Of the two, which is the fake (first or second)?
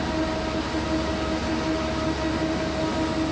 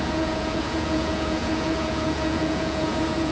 second